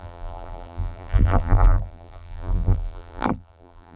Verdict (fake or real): fake